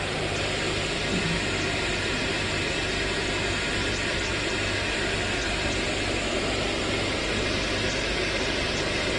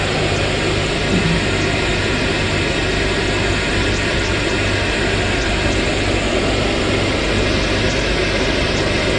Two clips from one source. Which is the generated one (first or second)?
first